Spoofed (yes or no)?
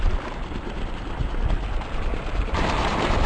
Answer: no